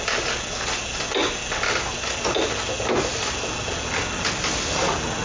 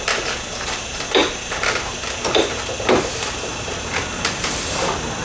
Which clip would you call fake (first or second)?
second